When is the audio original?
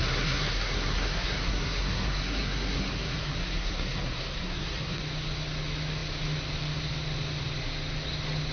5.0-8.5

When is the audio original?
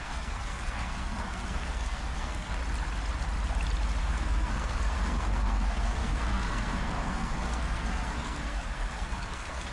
2.6-4.0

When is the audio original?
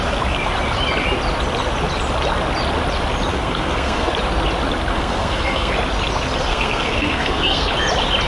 0.0-3.3; 4.1-4.9; 5.7-6.5; 7.7-8.3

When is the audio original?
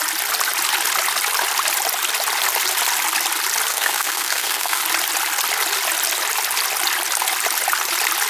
0.0-3.7; 4.8-8.3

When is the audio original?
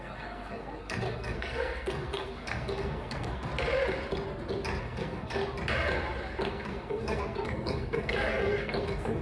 3.5-4.8; 5.4-6.5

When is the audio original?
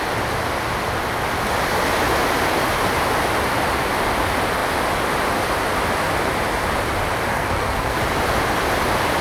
0.0-7.3; 8.0-9.2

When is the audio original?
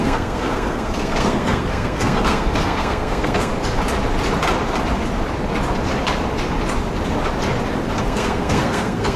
3.5-8.0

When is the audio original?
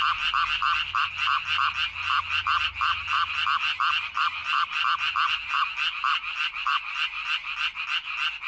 0.0-8.5